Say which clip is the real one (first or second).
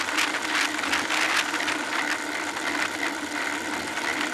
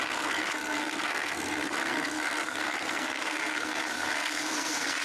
first